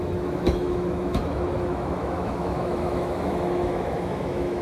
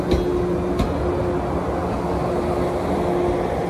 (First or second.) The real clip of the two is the second